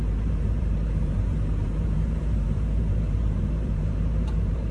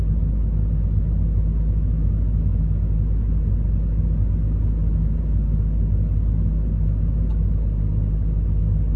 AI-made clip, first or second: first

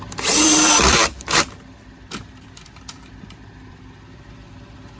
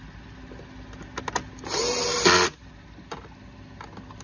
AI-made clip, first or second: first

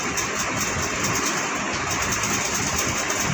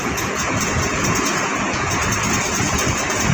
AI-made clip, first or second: second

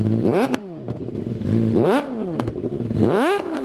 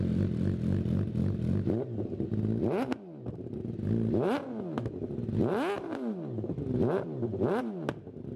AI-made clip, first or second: first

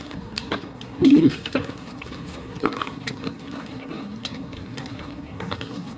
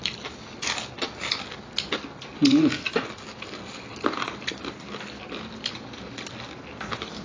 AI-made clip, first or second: first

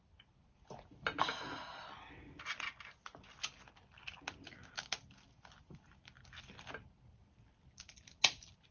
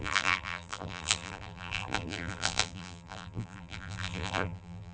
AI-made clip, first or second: second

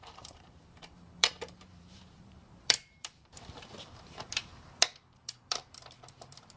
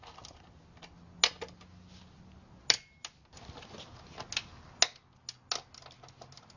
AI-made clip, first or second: first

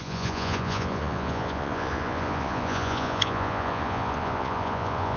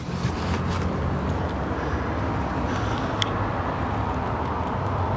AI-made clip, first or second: first